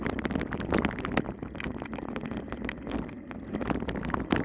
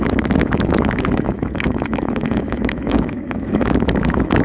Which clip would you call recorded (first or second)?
first